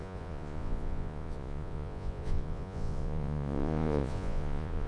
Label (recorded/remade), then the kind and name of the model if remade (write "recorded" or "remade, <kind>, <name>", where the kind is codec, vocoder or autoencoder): remade, vocoder, Vocos